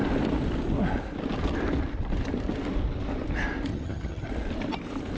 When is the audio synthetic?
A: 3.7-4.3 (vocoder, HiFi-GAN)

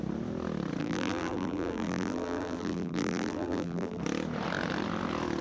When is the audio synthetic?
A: 0.8-4.0 (vocoder, BigVGAN v2)

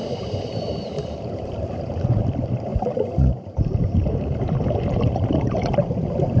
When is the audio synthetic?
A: 0.0-1.9 (vocoder, BigVGAN v2); 2.7-5.7

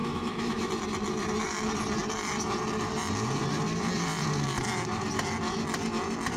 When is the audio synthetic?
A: 0.0-0.7 (autoencoder, DAC-VAE)

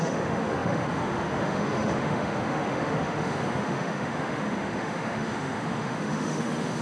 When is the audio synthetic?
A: 0.0-6.8 (autoencoder, DAC-VAE)

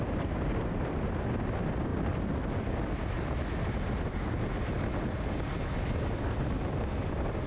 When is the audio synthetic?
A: none

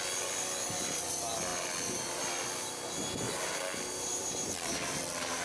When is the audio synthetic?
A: none

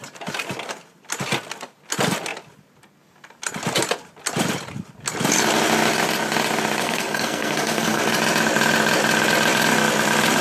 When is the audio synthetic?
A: 6.8-8.0 (codec, SNAC)